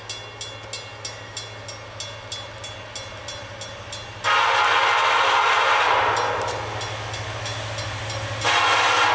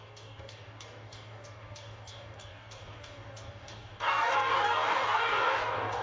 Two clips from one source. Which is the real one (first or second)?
first